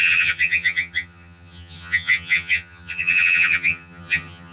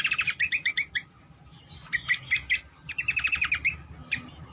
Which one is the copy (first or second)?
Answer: first